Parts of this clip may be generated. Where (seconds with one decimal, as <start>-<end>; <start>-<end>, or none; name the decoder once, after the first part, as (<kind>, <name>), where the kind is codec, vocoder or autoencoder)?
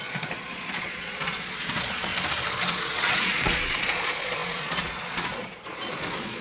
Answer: 0.0-2.1 (vocoder, Vocos); 2.7-6.4